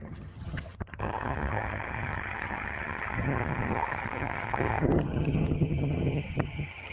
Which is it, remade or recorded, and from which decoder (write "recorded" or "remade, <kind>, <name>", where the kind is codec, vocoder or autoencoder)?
remade, vocoder, HiFi-GAN